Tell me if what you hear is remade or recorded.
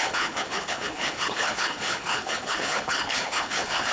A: remade